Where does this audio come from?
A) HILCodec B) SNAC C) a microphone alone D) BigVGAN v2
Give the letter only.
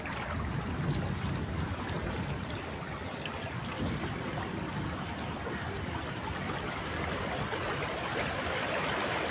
C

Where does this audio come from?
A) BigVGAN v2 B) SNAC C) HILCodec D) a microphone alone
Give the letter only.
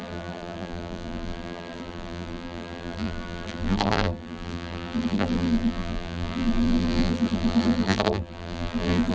A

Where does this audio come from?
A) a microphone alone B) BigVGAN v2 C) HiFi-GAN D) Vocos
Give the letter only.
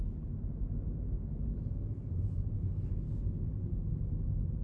A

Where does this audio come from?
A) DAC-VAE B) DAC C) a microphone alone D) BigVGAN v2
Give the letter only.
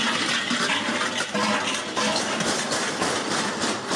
D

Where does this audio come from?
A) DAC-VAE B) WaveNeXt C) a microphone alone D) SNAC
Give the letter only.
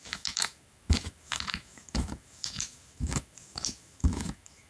A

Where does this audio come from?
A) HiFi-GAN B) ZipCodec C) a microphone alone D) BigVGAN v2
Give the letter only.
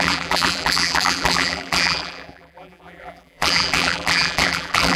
D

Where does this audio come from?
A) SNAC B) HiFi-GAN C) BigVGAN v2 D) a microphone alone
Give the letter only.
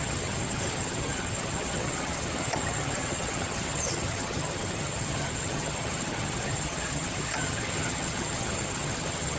B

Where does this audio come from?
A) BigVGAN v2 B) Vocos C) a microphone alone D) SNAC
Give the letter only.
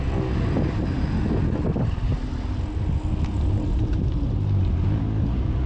C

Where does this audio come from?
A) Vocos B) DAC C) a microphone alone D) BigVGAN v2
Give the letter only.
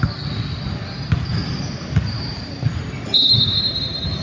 C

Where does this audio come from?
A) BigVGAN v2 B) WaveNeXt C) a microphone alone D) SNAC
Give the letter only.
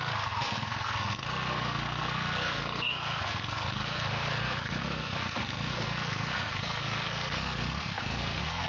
D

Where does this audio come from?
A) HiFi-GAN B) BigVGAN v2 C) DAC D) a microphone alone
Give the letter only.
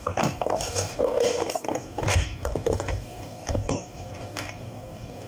C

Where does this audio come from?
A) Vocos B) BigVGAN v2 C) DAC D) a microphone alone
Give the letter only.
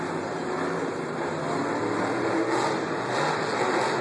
D